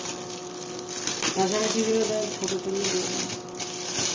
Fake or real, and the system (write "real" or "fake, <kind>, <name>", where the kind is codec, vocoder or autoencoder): real